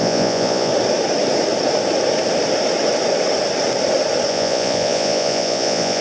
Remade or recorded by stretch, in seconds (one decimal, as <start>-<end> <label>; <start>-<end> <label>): 0.0-0.7 remade; 0.7-4.3 recorded; 4.3-6.0 remade